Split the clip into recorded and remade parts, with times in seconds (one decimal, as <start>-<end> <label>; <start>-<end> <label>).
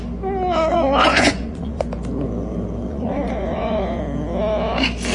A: 0.0-0.7 recorded; 0.7-1.9 remade; 1.9-2.9 recorded; 2.9-4.0 remade; 4.0-5.1 recorded